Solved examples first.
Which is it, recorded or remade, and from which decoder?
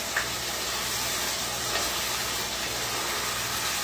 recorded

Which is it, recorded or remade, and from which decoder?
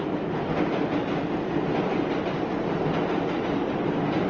recorded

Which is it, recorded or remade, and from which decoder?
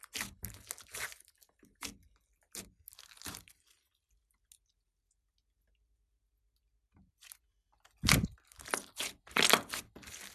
recorded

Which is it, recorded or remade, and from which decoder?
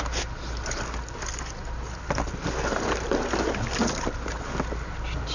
recorded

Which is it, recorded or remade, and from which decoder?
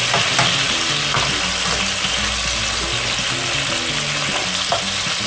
recorded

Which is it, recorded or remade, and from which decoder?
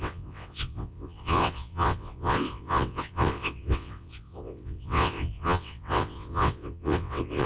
remade, vocoder, WaveNeXt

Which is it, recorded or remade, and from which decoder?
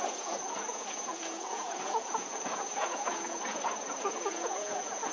remade, vocoder, Vocos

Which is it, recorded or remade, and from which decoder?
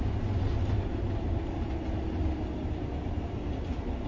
recorded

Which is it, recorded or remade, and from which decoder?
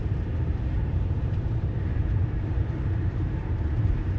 remade, vocoder, BigVGAN v2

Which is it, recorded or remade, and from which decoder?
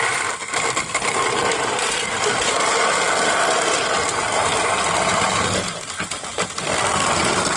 remade, vocoder, BigVGAN v2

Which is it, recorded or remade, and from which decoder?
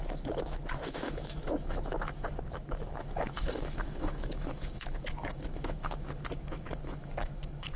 remade, autoencoder, DAC-VAE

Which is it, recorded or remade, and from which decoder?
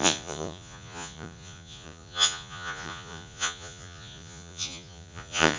remade, vocoder, Vocos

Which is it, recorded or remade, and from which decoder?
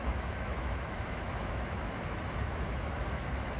remade, autoencoder, DAC-VAE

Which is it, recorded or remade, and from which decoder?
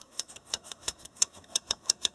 remade, codec, SNAC